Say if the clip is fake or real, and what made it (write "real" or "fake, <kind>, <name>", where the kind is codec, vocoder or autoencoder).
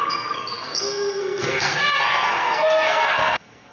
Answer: fake, codec, SNAC